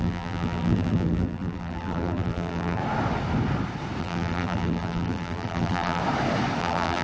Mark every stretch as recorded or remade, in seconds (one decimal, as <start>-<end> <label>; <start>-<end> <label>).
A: 0.0-2.8 remade; 2.8-4.0 recorded; 4.0-6.0 remade; 6.0-6.6 recorded; 6.6-7.0 remade